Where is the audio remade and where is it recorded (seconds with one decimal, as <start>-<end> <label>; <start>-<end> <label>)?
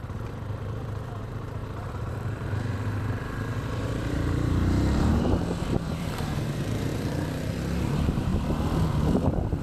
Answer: 0.0-1.6 remade; 1.6-2.1 recorded; 2.1-8.3 remade; 8.3-9.6 recorded